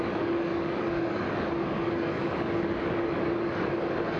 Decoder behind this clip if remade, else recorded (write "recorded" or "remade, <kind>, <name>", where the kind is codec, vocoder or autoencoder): remade, codec, DAC